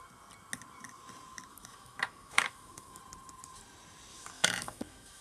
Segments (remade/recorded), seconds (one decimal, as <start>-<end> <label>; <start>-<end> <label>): 0.0-1.5 recorded; 1.5-3.0 remade; 3.0-4.1 recorded; 4.1-5.2 remade